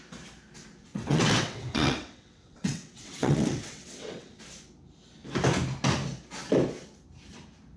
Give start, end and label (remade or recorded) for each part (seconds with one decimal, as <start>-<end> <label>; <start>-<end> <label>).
0.0-0.9 recorded; 0.9-4.4 remade; 4.4-7.8 recorded